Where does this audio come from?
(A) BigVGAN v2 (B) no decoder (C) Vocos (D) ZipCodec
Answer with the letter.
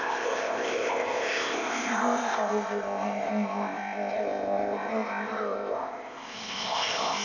D